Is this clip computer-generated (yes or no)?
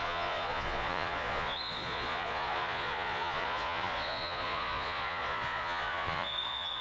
yes